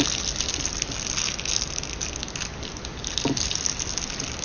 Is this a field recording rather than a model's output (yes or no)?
yes